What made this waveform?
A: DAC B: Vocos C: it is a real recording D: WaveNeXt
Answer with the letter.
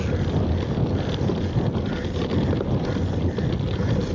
C